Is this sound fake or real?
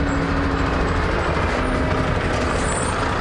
real